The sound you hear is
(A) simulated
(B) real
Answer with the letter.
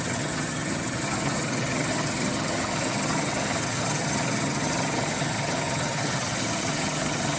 A